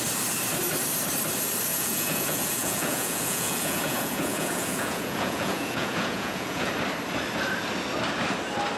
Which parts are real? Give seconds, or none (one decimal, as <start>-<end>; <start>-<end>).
0.0-1.7; 6.7-8.8